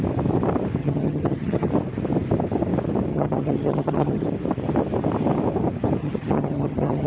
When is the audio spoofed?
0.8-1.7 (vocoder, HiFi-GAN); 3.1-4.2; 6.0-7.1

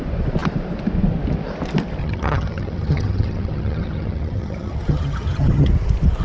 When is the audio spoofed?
2.0-5.7 (vocoder, HiFi-GAN)

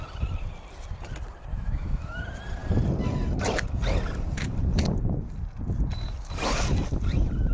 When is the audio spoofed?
1.5-2.2 (autoencoder, DAC-VAE)

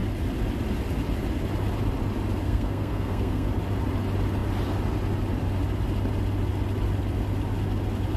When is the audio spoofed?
2.4-3.5 (codec, SNAC)

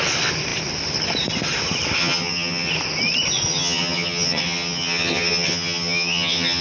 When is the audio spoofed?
2.0-2.7 (vocoder, HiFi-GAN); 3.5-6.6

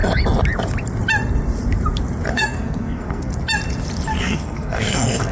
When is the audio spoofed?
2.3-3.3 (codec, SNAC); 4.2-5.3